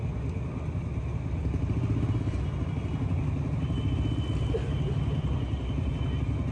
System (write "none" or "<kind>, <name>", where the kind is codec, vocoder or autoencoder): none